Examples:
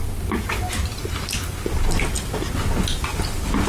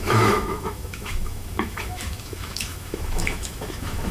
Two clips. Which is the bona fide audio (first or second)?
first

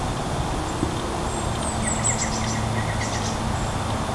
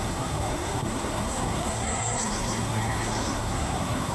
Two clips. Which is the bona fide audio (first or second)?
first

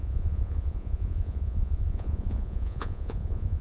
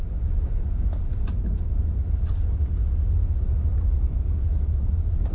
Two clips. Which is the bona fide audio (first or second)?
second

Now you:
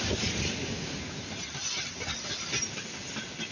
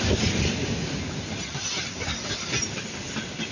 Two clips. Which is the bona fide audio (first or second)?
first